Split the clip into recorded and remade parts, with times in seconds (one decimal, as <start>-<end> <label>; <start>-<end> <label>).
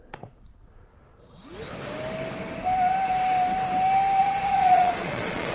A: 0.0-0.9 remade; 0.9-4.2 recorded; 4.2-5.5 remade